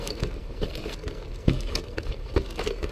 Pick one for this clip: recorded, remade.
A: remade